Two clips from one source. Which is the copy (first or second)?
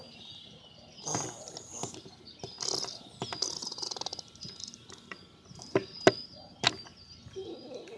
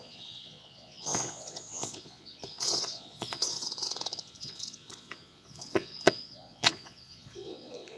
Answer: second